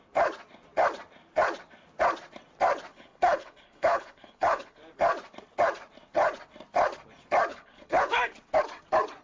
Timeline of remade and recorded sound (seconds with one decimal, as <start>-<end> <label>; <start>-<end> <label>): 0.0-2.9 recorded; 2.9-4.8 remade; 4.8-7.5 recorded; 7.5-8.2 remade; 8.2-9.2 recorded